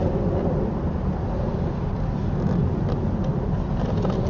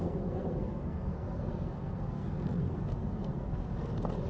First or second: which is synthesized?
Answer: second